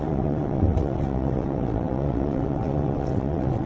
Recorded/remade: remade